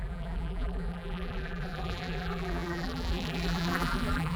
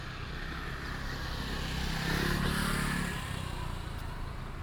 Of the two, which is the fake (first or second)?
first